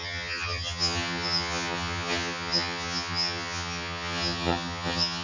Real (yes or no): no